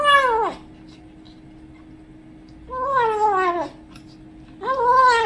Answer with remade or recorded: recorded